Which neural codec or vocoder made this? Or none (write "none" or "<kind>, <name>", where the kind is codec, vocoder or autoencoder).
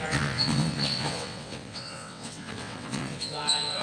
vocoder, WaveNeXt